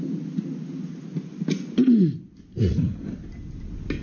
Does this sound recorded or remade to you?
recorded